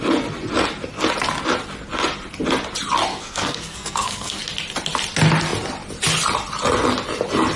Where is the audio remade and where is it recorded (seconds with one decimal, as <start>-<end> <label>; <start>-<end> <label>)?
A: 0.0-3.1 recorded; 3.1-4.4 remade; 4.4-7.6 recorded